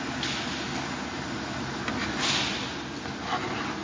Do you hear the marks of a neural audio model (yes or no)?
no